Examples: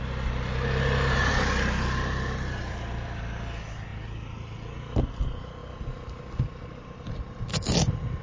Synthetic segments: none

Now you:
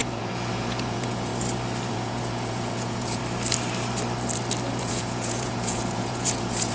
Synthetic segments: 0.0-1.3 (vocoder, Vocos); 1.9-3.2; 4.8-6.7